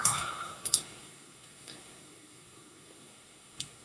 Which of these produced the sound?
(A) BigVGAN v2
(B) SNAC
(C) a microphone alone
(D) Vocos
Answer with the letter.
B